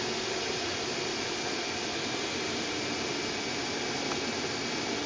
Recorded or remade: recorded